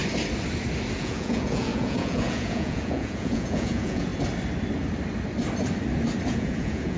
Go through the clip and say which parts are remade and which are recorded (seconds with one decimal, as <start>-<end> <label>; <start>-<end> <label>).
0.0-1.0 recorded; 1.0-4.1 remade; 4.1-6.3 recorded; 6.3-7.0 remade